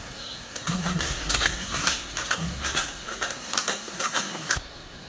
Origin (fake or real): fake